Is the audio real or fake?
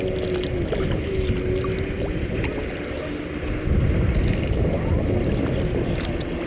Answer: real